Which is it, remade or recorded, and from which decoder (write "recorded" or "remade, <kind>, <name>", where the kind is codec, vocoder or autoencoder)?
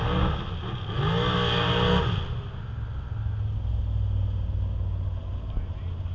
recorded